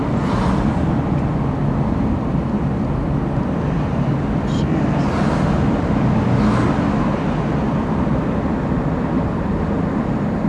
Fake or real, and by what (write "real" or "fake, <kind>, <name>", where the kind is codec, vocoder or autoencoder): real